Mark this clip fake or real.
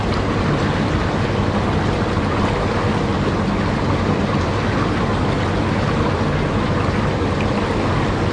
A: real